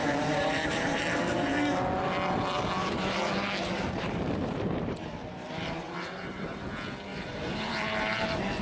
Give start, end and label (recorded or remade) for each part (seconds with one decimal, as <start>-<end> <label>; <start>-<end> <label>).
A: 0.0-1.2 remade; 1.2-2.8 recorded; 2.8-6.6 remade; 6.6-7.1 recorded; 7.1-8.6 remade